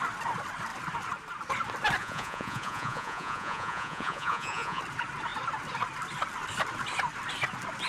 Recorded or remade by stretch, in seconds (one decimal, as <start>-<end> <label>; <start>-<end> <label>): 0.0-2.0 recorded; 2.0-4.8 remade; 4.8-7.9 recorded